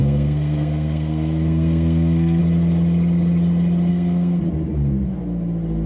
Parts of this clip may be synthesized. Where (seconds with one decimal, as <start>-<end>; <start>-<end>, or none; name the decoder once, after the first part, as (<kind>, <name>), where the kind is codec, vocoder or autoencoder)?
0.0-2.4 (codec, SNAC); 3.9-4.4

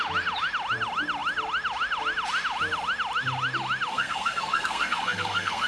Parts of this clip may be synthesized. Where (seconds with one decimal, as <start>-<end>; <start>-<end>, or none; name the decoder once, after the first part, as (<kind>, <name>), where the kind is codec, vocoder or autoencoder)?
3.9-5.7 (codec, SNAC)

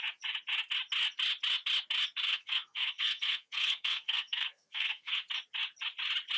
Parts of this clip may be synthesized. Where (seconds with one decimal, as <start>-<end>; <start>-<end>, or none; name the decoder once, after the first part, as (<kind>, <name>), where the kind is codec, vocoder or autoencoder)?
2.3-5.2 (codec, SNAC)